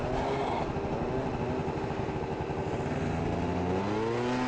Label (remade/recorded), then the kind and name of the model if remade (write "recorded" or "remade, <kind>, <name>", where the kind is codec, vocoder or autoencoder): recorded